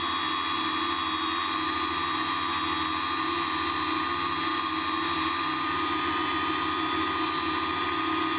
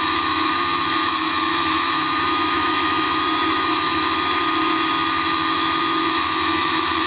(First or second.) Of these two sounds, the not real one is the second